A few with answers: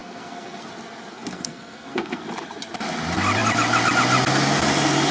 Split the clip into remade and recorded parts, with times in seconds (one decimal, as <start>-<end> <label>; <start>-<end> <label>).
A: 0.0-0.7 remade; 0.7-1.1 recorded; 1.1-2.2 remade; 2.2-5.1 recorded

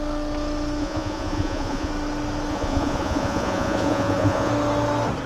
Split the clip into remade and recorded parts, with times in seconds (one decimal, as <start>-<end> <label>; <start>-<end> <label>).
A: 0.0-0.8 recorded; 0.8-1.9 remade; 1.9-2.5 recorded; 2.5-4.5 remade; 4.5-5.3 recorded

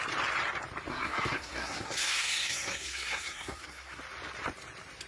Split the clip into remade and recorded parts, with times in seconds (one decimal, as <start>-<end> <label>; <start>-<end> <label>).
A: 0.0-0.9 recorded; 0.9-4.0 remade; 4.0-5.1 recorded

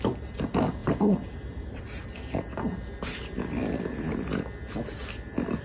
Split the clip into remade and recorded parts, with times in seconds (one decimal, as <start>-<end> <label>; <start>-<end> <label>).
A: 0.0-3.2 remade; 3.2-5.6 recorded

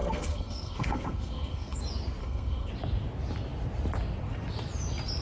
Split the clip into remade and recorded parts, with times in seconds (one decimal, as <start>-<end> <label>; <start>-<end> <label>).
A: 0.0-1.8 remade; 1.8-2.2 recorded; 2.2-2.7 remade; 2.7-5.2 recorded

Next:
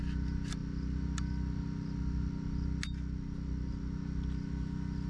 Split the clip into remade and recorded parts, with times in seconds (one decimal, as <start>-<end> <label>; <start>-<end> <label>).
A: 0.0-5.1 recorded